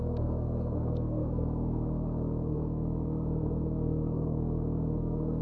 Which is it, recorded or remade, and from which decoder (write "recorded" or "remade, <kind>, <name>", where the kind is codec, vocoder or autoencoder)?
remade, codec, SNAC